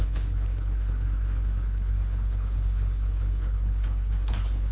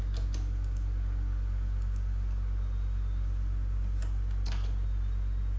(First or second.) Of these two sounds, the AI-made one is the first